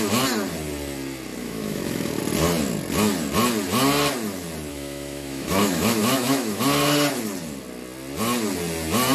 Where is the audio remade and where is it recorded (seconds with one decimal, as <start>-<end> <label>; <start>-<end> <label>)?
0.0-1.4 recorded; 1.4-2.2 remade; 2.2-4.7 recorded; 4.7-6.6 remade; 6.6-9.1 recorded